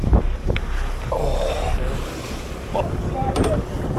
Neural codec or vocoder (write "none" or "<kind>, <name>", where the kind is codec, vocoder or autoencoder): none